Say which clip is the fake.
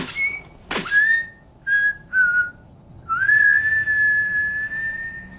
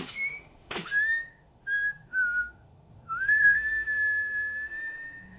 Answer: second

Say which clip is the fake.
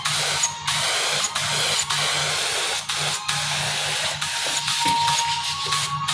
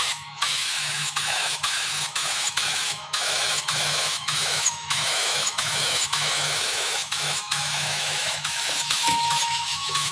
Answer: second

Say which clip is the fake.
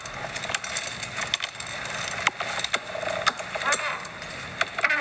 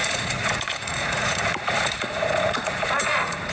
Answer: second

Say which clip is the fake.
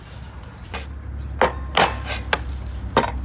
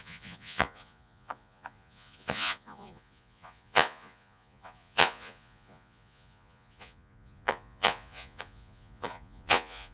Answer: second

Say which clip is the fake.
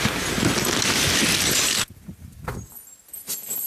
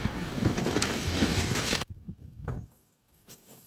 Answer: second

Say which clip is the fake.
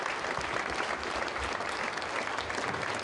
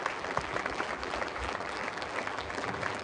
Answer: second